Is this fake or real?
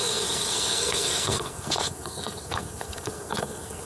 fake